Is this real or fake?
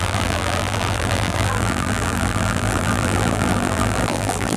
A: fake